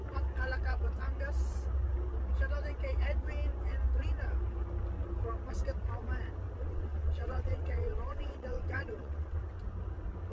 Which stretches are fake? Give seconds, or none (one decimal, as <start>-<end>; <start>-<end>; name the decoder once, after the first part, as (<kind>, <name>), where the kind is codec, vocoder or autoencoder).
6.6-9.4 (vocoder, WaveNeXt)